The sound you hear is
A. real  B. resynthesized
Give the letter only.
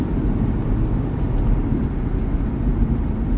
A